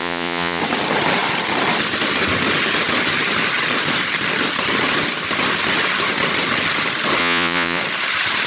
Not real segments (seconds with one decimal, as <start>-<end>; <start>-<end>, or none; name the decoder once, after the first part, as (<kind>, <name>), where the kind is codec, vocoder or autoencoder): 0.0-0.6 (vocoder, Vocos); 7.2-7.8